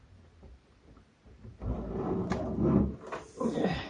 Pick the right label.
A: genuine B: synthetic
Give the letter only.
A